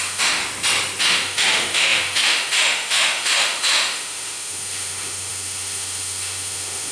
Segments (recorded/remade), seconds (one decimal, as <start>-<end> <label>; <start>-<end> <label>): 0.0-0.4 remade; 0.4-1.0 recorded; 1.0-6.9 remade